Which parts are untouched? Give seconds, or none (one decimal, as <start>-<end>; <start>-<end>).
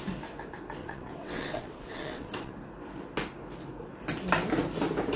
0.0-0.8; 2.5-5.2